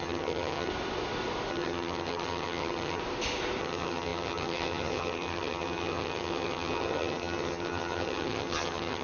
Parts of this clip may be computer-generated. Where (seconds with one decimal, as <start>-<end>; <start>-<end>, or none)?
0.0-0.7; 1.5-3.0; 3.6-9.0